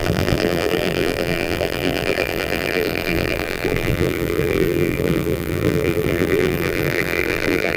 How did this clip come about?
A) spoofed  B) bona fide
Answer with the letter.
A